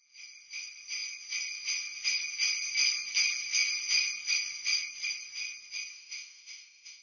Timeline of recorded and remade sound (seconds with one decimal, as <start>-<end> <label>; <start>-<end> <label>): 0.0-5.9 recorded; 5.9-7.0 remade